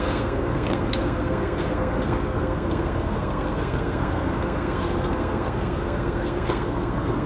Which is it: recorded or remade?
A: remade